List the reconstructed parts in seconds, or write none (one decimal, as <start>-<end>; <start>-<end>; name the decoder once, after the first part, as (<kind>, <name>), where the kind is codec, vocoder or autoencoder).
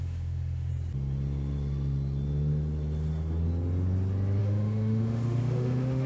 0.0-0.7 (autoencoder, DAC-VAE); 4.4-6.1